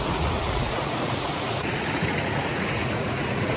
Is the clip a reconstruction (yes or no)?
yes